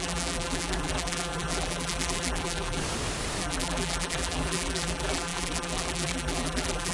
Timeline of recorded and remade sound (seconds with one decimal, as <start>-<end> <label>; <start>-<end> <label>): 0.0-2.8 remade; 2.8-3.4 recorded; 3.4-6.9 remade